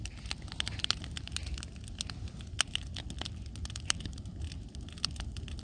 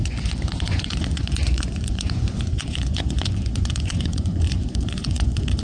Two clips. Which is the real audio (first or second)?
first